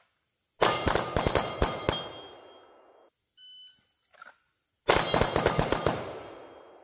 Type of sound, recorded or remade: recorded